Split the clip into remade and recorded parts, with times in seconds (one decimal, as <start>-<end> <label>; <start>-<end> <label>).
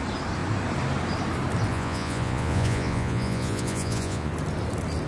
0.0-1.7 recorded; 1.7-4.3 remade; 4.3-5.1 recorded